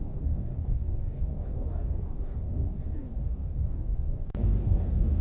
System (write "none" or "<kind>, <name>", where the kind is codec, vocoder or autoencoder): codec, DAC